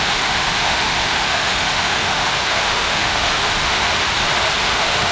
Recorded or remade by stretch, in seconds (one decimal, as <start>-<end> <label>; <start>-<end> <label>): 0.0-3.9 remade; 3.9-4.6 recorded; 4.6-5.1 remade